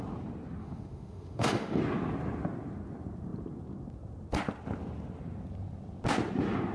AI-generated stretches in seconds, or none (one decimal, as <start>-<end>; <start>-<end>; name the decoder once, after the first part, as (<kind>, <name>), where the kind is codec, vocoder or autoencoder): 0.6-1.8 (autoencoder, DAC-VAE)